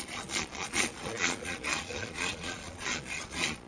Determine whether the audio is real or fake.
fake